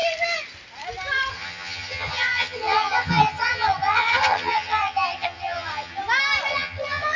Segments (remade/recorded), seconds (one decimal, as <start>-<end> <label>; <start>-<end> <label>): 0.0-1.3 recorded; 1.3-6.0 remade; 6.0-6.5 recorded; 6.5-7.2 remade